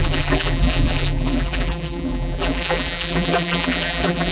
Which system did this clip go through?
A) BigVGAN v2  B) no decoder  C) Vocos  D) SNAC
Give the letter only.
A